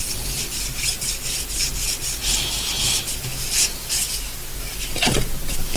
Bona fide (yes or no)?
yes